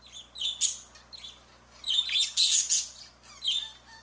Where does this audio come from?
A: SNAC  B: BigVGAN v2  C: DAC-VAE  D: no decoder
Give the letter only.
D